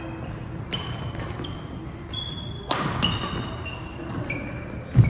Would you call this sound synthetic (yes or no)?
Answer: no